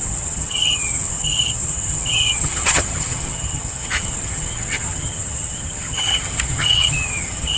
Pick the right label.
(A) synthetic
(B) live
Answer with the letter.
A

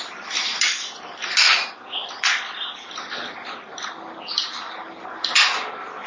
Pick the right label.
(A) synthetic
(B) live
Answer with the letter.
B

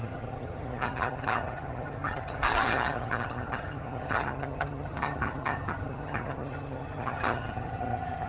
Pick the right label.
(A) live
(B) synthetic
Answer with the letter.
B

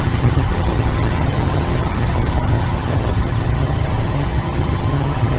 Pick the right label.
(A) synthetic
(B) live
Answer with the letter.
A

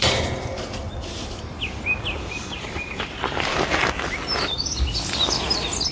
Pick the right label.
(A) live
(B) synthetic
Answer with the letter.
A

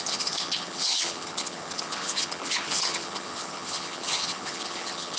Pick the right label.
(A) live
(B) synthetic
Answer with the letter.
B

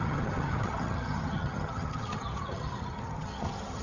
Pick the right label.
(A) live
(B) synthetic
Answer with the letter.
B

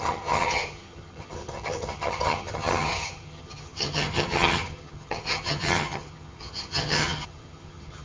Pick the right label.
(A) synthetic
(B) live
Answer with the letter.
A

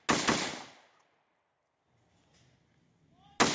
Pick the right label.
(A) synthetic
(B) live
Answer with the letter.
B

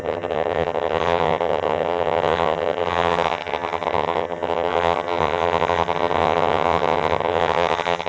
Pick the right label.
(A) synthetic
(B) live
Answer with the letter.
A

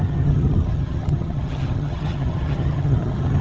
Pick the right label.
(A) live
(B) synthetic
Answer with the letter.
B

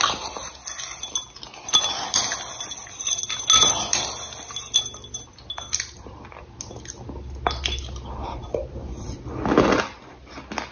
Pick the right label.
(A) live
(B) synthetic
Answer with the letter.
A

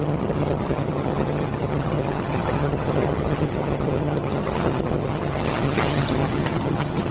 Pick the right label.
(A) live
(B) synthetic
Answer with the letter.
B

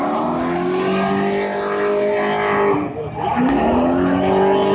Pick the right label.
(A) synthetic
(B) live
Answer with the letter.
B